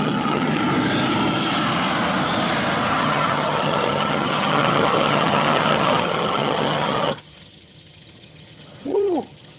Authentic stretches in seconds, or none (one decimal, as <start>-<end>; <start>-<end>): 0.6-2.9